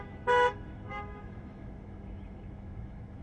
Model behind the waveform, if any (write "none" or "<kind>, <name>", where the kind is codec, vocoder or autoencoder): autoencoder, DAC-VAE